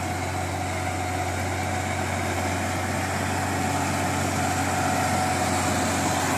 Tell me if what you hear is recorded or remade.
recorded